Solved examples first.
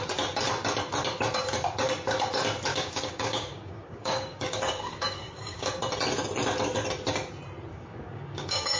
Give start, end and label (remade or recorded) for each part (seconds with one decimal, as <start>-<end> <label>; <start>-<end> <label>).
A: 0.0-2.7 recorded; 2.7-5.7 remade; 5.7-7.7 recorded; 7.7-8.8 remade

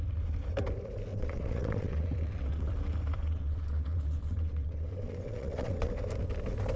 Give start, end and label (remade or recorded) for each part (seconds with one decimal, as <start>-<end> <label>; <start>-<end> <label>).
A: 0.0-1.1 recorded; 1.1-2.7 remade; 2.7-3.2 recorded; 3.2-5.9 remade; 5.9-6.8 recorded

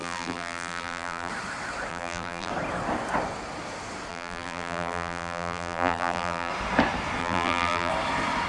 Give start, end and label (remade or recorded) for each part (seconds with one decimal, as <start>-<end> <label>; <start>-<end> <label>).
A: 0.0-1.3 remade; 1.3-1.9 recorded; 1.9-2.5 remade; 2.5-4.1 recorded; 4.1-6.5 remade; 6.5-7.2 recorded; 7.2-7.9 remade; 7.9-8.5 recorded